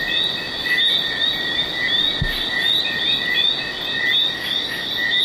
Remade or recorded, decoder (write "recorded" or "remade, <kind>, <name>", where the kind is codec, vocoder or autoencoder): recorded